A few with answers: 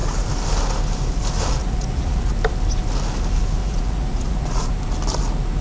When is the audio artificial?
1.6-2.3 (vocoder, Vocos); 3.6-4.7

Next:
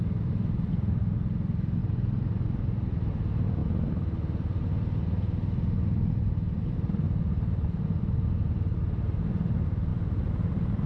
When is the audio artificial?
1.8-3.1 (vocoder, BigVGAN v2)

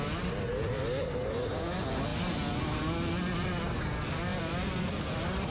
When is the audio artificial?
4.3-4.8 (vocoder, BigVGAN v2)

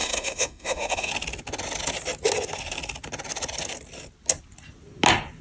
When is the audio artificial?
0.0-1.1 (autoencoder, DAC-VAE)